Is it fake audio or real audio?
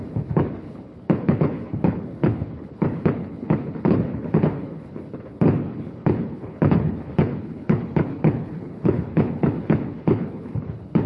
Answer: fake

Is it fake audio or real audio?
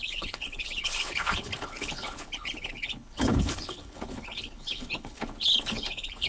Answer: fake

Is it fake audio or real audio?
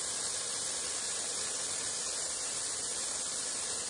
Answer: real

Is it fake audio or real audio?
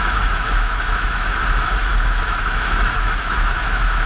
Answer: fake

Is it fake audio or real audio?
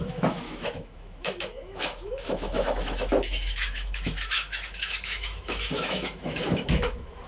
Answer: fake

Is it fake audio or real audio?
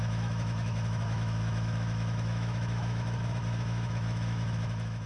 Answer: fake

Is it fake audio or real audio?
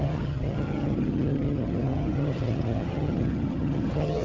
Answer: fake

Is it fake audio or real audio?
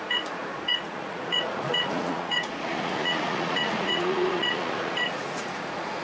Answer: fake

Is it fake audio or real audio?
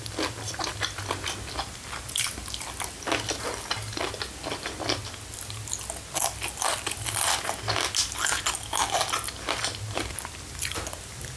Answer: real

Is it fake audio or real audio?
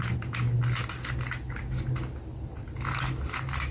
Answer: real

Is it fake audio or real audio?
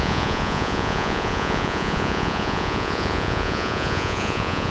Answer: fake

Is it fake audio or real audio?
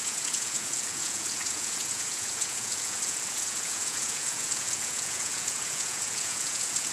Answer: fake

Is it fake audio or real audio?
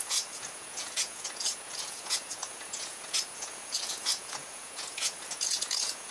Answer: fake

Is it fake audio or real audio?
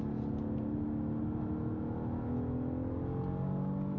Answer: real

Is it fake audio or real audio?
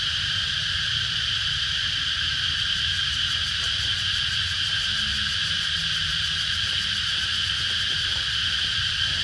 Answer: fake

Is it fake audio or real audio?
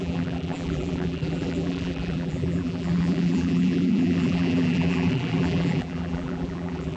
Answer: fake